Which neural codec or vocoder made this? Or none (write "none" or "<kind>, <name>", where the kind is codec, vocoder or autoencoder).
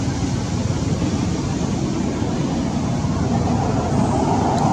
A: none